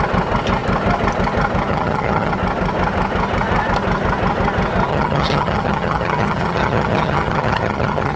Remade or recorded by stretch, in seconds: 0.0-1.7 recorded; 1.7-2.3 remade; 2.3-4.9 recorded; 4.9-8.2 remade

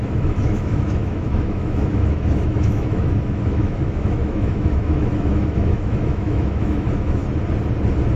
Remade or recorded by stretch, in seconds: 0.0-7.2 remade; 7.2-8.2 recorded

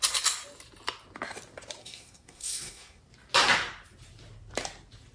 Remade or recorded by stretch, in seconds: 0.0-1.8 recorded; 1.8-3.0 remade; 3.0-5.1 recorded

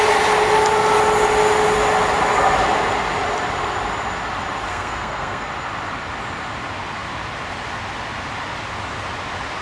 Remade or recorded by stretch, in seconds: 0.0-4.7 recorded; 4.7-5.5 remade; 5.5-9.6 recorded

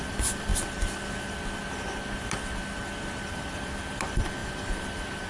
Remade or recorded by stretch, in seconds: 0.0-0.5 remade; 0.5-3.2 recorded; 3.2-5.3 remade

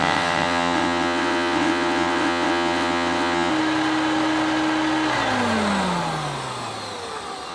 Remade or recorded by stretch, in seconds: 0.0-3.5 remade; 3.5-7.5 recorded

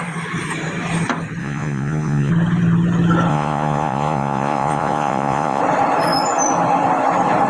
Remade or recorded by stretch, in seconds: 0.0-1.4 recorded; 1.4-2.3 remade; 2.3-3.3 recorded; 3.3-5.6 remade; 5.6-7.5 recorded

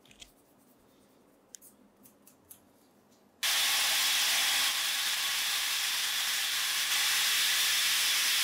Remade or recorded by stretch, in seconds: 0.0-4.7 recorded; 4.7-6.9 remade; 6.9-8.4 recorded